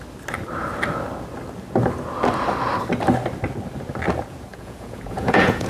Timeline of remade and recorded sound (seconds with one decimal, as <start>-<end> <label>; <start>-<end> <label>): 0.0-4.5 recorded; 4.5-5.7 remade

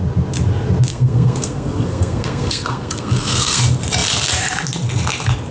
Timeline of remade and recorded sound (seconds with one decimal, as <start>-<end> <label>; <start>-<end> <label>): 0.0-0.9 recorded; 0.9-3.6 remade; 3.6-5.5 recorded

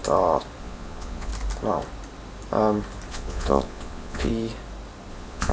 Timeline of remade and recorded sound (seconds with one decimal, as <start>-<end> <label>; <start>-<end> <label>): 0.0-0.6 recorded; 0.6-1.3 remade; 1.3-3.1 recorded; 3.1-4.3 remade; 4.3-5.1 recorded; 5.1-5.5 remade

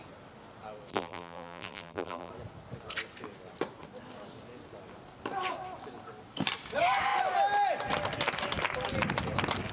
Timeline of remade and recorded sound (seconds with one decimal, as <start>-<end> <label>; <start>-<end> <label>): 0.0-0.9 recorded; 0.9-2.3 remade; 2.3-9.7 recorded

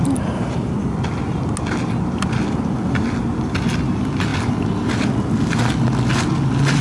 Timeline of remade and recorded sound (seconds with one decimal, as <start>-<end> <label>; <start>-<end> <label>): 0.0-6.8 recorded